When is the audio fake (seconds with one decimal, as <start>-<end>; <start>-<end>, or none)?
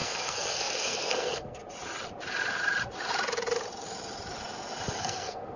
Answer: 0.0-1.6; 5.0-5.6